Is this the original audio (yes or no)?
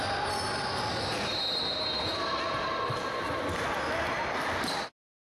yes